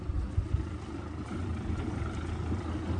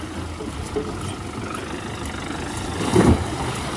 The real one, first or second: second